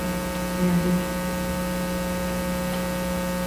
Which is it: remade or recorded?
recorded